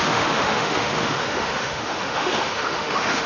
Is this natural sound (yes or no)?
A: no